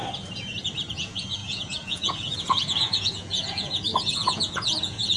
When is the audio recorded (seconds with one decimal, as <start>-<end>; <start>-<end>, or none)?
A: 0.0-0.9